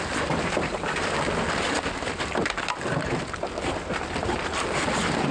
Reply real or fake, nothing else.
real